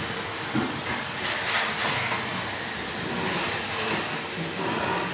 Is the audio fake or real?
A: real